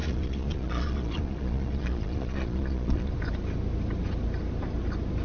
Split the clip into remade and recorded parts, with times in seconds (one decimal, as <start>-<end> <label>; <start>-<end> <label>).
0.0-3.1 remade; 3.1-5.2 recorded